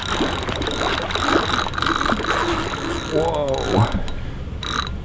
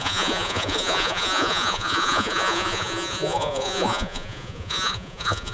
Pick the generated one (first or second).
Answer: second